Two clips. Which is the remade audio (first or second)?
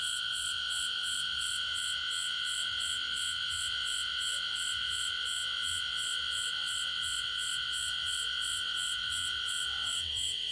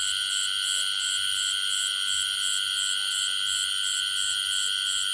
first